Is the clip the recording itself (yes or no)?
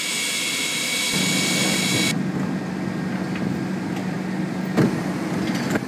yes